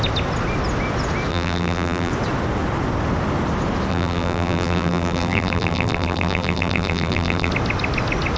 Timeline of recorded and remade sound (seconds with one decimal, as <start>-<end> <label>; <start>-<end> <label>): 0.0-1.3 recorded; 1.3-2.1 remade; 2.1-3.9 recorded; 3.9-7.5 remade; 7.5-8.4 recorded